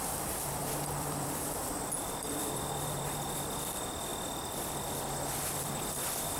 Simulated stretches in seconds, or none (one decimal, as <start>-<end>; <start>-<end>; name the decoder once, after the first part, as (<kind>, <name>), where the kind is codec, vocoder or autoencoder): 0.0-4.1 (vocoder, BigVGAN v2); 5.9-6.4